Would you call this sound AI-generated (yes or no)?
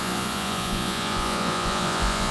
yes